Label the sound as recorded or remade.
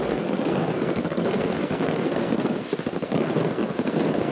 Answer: remade